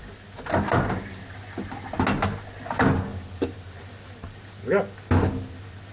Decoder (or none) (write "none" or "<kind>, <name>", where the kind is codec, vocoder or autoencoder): none